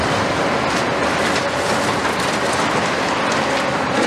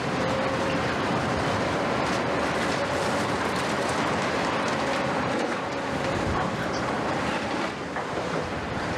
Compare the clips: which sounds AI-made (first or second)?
second